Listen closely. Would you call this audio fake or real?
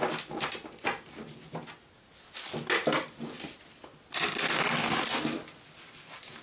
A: real